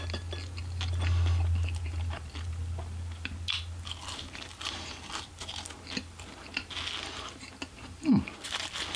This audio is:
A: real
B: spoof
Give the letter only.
A